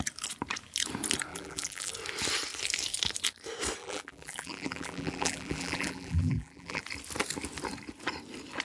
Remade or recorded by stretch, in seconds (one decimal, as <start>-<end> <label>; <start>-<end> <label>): 0.0-1.3 recorded; 1.3-1.9 remade; 1.9-3.8 recorded; 3.8-6.8 remade; 6.8-8.6 recorded